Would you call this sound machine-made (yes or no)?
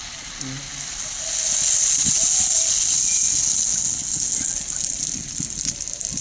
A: no